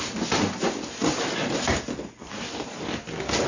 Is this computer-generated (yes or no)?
no